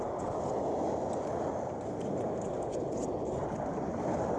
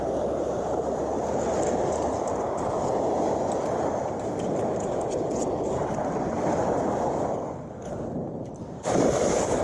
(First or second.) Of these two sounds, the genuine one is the first